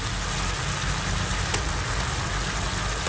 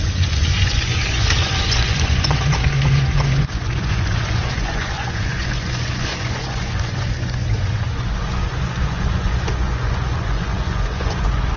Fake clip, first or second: second